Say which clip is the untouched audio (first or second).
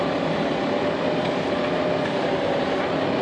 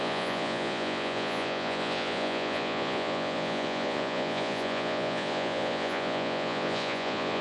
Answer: first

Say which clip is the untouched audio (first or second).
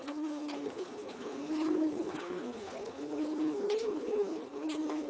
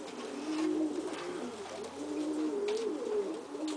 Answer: second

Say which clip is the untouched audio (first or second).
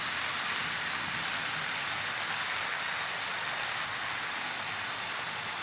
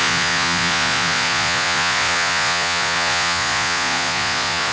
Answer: first